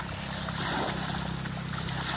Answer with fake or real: real